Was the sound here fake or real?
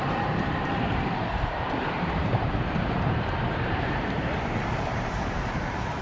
fake